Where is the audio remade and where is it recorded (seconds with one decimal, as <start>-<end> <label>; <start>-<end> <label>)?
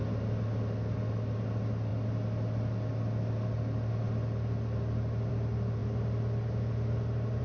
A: 0.0-7.4 recorded